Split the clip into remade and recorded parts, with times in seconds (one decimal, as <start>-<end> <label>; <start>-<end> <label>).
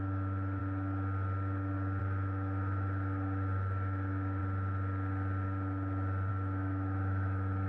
0.0-0.6 remade; 0.6-2.0 recorded; 2.0-4.4 remade; 4.4-6.3 recorded; 6.3-7.7 remade